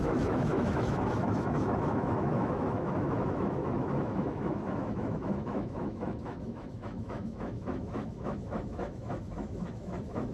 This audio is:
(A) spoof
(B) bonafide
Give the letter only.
A